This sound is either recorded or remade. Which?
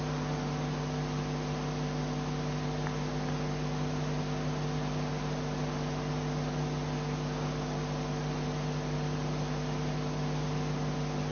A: recorded